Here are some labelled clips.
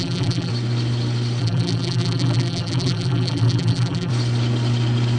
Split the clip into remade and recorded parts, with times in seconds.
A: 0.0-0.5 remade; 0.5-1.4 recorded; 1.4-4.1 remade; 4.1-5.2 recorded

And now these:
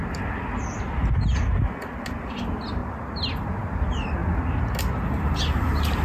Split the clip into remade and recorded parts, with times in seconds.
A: 0.0-6.0 recorded

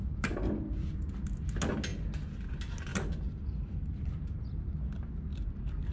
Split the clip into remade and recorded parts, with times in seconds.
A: 0.0-0.9 remade; 0.9-2.9 recorded; 2.9-4.5 remade; 4.5-5.9 recorded

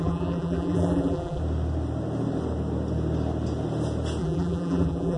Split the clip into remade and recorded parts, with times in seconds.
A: 0.0-1.4 remade; 1.4-4.2 recorded; 4.2-5.2 remade

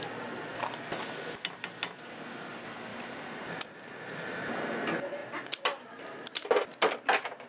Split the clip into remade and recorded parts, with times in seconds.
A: 0.0-2.9 recorded; 2.9-4.8 remade; 4.8-5.2 recorded; 5.2-6.3 remade; 6.3-7.5 recorded